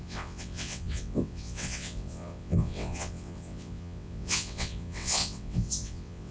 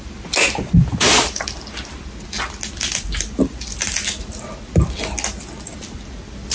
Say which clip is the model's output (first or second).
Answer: first